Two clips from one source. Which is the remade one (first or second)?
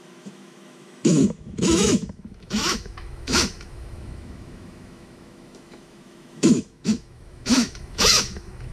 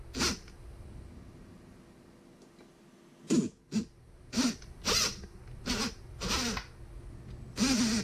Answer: first